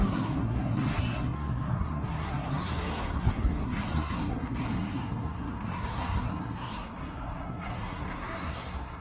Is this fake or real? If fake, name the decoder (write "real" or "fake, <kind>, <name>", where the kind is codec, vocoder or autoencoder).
fake, codec, SNAC